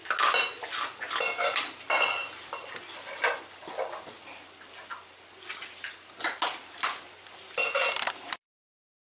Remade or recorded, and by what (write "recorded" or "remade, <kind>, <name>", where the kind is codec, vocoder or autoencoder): recorded